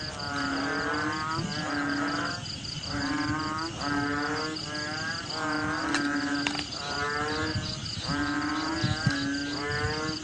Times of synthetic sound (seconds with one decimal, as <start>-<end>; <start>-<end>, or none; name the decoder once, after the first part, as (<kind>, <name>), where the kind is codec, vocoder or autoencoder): 7.8-8.7 (vocoder, BigVGAN v2)